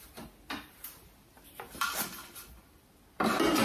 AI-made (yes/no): no